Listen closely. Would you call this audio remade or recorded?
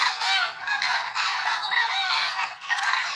remade